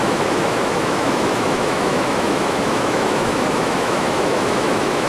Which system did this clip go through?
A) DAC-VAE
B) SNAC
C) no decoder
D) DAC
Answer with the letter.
A